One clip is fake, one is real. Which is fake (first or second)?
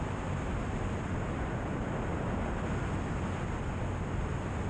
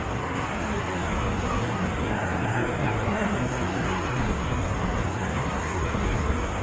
second